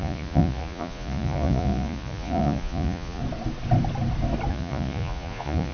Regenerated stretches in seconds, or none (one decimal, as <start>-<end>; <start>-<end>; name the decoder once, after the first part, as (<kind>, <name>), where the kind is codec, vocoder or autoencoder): 0.0-3.2 (vocoder, Vocos); 4.5-5.7